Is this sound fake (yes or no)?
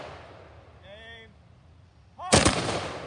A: no